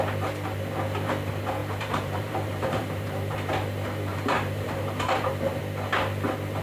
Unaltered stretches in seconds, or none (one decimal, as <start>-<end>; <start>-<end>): 0.0-1.6; 3.5-4.1; 5.6-6.6